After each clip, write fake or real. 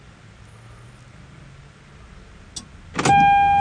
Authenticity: real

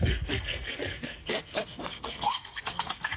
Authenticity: fake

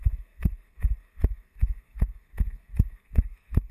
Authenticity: fake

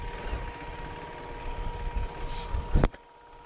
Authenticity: real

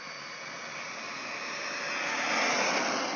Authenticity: real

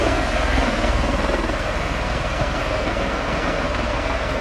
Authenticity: fake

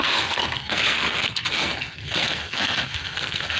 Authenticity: fake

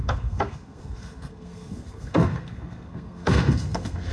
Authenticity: fake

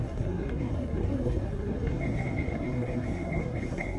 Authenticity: fake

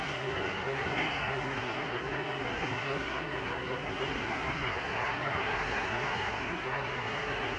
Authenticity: fake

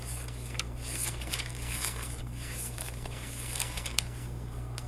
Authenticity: fake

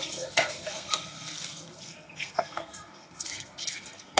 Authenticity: fake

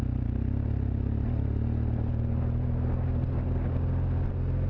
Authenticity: real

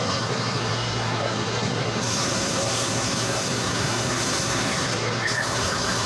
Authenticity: fake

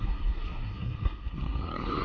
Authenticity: fake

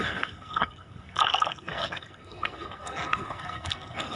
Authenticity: fake